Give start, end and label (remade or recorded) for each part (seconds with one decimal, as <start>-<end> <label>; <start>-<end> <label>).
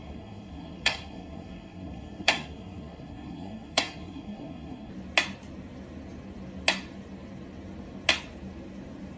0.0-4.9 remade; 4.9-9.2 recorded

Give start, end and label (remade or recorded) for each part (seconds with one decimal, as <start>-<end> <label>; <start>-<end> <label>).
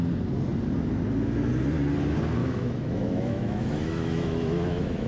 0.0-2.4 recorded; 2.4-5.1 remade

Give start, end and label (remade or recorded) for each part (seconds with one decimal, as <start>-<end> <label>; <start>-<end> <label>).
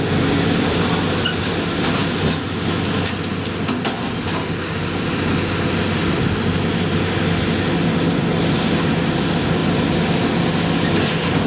0.0-11.5 recorded